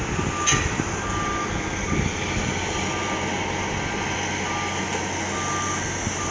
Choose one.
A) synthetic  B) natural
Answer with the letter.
B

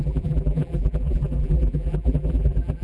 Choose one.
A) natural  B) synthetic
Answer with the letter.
B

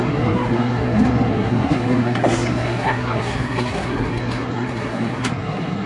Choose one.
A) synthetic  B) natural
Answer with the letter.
A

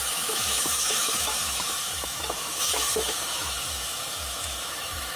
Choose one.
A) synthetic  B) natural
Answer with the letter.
A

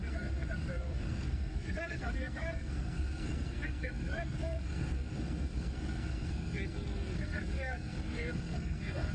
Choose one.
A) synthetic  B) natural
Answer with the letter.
A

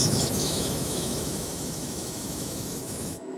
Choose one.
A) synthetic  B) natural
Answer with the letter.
A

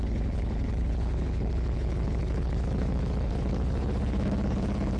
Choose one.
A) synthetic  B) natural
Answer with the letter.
A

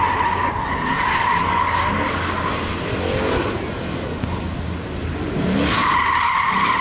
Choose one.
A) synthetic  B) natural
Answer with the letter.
B